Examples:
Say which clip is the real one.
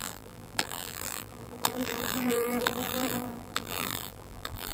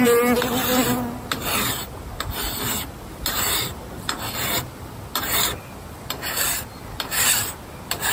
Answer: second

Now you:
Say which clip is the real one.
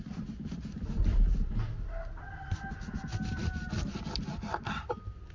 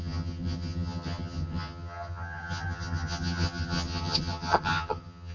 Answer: first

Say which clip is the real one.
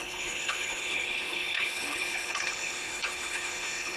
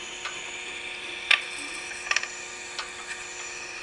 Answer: second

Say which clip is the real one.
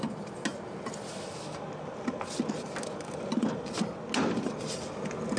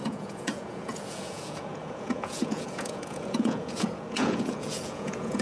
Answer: first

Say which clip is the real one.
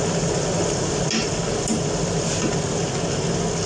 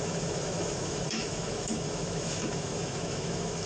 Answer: first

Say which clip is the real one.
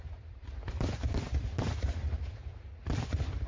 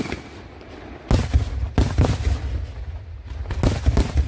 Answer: second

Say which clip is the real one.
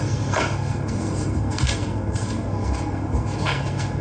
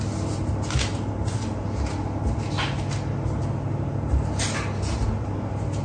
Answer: second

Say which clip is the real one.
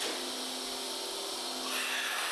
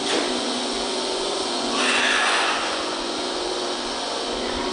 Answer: first